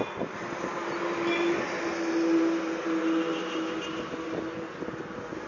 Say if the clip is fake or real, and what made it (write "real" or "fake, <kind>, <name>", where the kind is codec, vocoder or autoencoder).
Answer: real